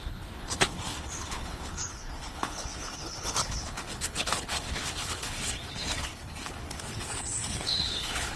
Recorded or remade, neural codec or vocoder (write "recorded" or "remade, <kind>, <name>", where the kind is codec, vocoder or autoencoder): remade, codec, HILCodec